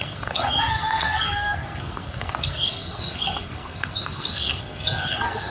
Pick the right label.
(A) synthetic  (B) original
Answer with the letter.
A